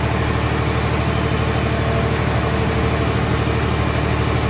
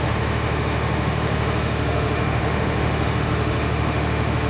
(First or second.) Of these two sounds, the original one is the first